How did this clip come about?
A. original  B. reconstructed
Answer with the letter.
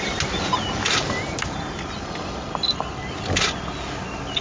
A